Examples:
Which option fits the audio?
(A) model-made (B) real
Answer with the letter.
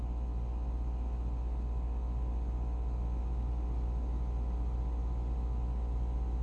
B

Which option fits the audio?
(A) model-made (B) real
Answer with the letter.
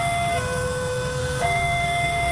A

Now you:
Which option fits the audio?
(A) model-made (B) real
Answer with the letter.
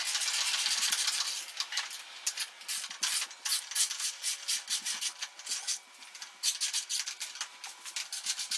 B